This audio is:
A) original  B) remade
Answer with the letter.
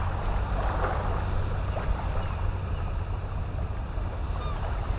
A